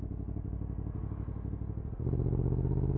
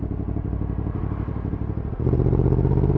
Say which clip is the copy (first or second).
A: second